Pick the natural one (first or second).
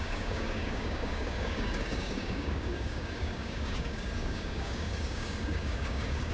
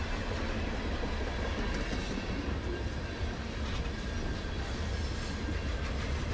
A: second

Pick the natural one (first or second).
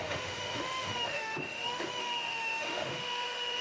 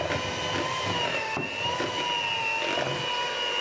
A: second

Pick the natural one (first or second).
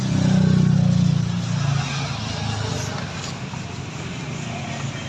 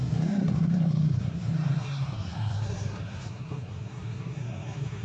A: first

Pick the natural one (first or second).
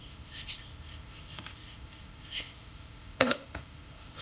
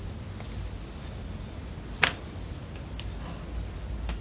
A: second